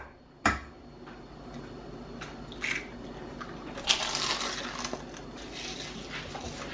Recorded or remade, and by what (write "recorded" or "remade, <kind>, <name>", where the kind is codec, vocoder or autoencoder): recorded